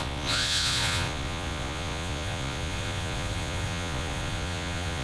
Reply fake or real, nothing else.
fake